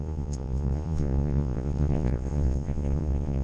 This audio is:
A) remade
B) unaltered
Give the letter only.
A